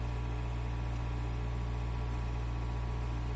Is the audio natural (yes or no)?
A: yes